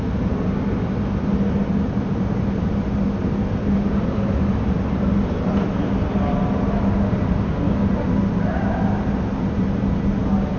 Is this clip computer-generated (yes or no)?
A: no